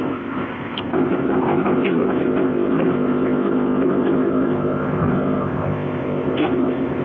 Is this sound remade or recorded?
remade